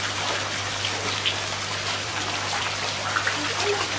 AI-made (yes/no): yes